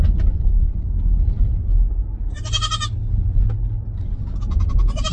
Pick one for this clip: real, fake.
real